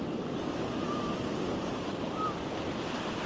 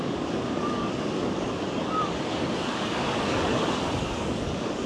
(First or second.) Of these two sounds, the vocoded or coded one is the second